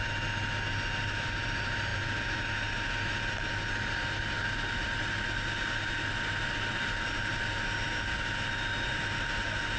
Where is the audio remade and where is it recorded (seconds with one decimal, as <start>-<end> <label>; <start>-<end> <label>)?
0.0-9.8 recorded